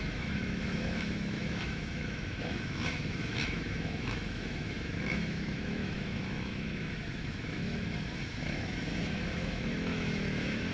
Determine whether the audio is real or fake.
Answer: fake